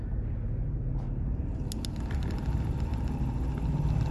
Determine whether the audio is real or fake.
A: real